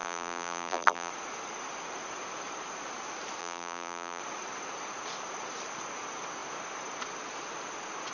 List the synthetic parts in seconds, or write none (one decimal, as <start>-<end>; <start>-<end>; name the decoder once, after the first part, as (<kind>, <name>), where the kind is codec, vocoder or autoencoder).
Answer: 0.0-1.1 (vocoder, BigVGAN v2); 3.4-4.2